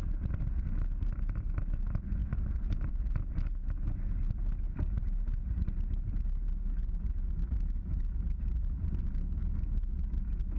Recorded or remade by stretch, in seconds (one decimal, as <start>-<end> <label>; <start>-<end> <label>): 0.0-7.4 recorded; 7.4-8.2 remade; 8.2-10.6 recorded